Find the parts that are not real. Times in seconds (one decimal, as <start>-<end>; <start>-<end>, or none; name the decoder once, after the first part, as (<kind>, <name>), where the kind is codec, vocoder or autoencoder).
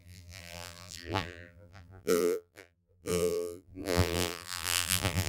0.0-5.3 (vocoder, BigVGAN v2)